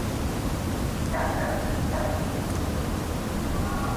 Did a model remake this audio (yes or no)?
no